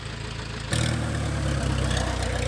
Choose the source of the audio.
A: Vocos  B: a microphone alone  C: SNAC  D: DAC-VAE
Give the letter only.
B